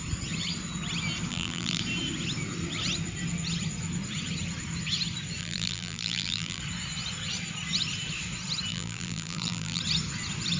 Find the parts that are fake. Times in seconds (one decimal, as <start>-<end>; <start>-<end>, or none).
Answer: 1.3-1.8; 5.4-6.6; 8.7-9.8